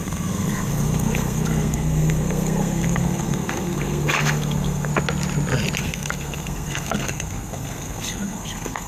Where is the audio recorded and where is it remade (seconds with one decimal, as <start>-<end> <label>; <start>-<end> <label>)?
0.0-4.9 remade; 4.9-5.8 recorded; 5.8-8.9 remade

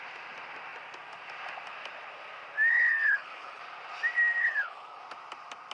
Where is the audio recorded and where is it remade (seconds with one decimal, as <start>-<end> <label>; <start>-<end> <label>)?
0.0-2.7 recorded; 2.7-3.6 remade; 3.6-4.4 recorded; 4.4-5.0 remade; 5.0-5.7 recorded

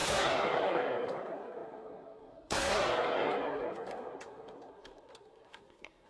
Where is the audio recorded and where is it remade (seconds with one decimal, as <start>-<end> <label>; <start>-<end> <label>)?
0.0-6.1 remade

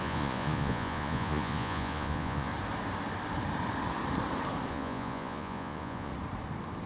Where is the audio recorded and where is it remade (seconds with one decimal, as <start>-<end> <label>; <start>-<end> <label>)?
0.0-2.5 remade; 2.5-4.7 recorded; 4.7-6.1 remade; 6.1-6.9 recorded

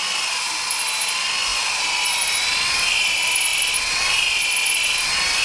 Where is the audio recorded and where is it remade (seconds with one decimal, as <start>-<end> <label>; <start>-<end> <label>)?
0.0-5.4 recorded

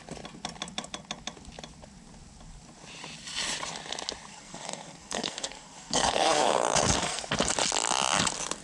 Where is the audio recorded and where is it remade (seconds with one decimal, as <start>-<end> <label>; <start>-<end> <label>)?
0.0-4.3 recorded; 4.3-7.2 remade; 7.2-8.6 recorded

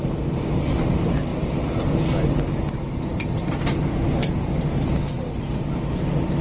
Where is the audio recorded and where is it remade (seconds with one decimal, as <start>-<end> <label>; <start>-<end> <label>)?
0.0-1.3 recorded; 1.3-1.8 remade; 1.8-3.1 recorded; 3.1-3.8 remade; 3.8-6.4 recorded

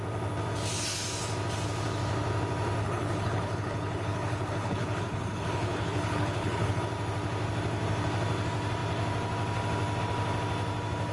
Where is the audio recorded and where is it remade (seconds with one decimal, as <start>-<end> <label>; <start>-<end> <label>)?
0.0-2.8 recorded; 2.8-6.8 remade; 6.8-11.1 recorded